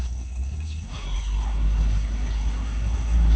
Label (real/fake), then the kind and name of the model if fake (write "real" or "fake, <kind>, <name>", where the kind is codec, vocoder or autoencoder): fake, codec, SNAC